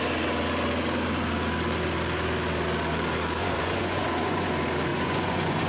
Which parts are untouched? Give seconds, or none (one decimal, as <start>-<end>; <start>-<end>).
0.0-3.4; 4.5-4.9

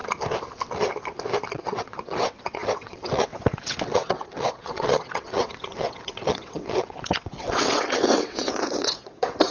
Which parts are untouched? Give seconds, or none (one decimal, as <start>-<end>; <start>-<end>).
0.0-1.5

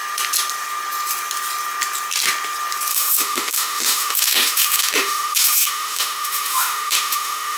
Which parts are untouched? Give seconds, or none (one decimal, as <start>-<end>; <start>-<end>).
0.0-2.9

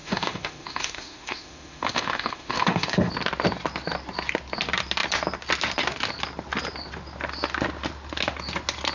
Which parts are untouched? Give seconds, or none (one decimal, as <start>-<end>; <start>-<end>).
3.1-8.9

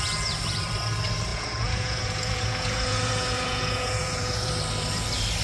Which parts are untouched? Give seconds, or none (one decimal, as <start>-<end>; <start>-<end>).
0.0-1.3; 4.5-5.4

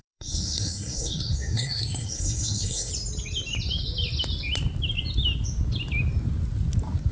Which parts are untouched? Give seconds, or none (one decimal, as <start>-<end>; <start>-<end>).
2.9-7.1

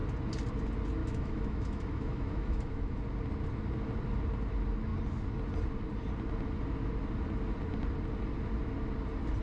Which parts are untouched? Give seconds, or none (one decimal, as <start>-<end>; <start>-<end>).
0.0-1.0; 3.0-9.4

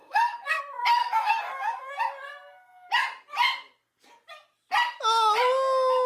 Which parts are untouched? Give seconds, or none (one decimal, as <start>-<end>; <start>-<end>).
0.6-1.0; 2.0-6.1